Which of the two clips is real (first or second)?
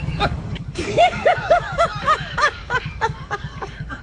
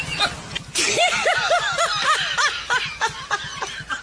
second